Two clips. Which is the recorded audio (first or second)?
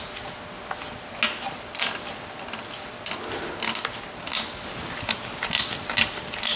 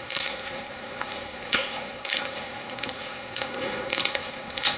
first